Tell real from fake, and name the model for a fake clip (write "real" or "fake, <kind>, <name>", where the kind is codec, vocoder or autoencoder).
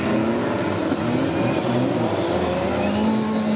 real